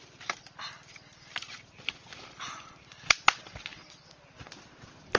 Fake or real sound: real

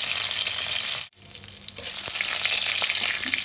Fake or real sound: real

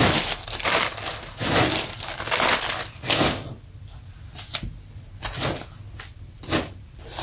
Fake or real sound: real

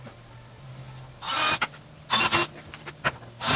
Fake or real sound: real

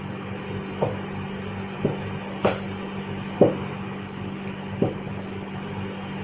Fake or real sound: real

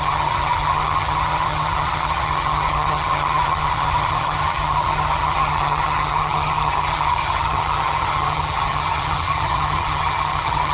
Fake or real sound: fake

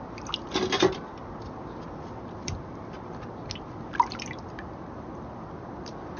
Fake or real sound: real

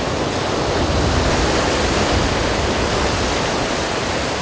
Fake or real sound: real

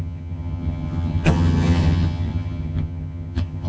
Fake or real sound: fake